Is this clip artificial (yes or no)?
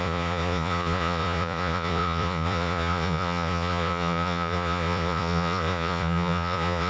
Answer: yes